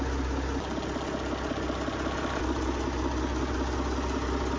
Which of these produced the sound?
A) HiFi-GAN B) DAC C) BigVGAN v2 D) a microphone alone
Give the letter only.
D